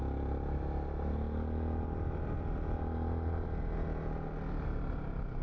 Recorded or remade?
recorded